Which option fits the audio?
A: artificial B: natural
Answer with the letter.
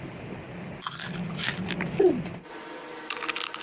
B